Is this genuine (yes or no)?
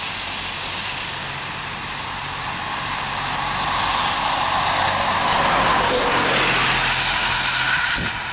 yes